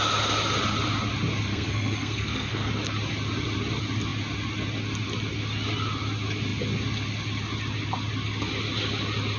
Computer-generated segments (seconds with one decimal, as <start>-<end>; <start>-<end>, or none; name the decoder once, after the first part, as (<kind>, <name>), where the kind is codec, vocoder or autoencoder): 1.5-2.7 (codec, SNAC)